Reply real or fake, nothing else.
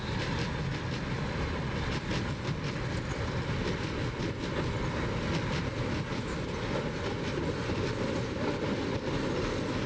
real